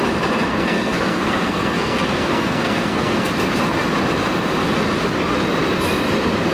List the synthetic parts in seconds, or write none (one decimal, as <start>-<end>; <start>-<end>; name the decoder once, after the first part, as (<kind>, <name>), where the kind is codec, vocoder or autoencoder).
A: 0.5-3.3 (codec, SNAC)